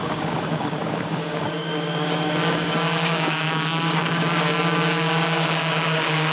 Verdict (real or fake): fake